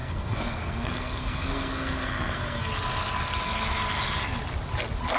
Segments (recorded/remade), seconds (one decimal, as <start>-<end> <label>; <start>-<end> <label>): 0.0-2.7 remade; 2.7-5.2 recorded